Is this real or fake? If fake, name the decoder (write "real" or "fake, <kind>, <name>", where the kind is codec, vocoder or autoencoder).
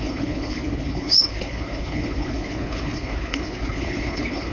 fake, codec, HILCodec